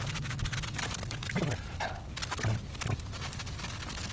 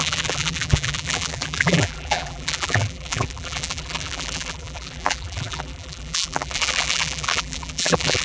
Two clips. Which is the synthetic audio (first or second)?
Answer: second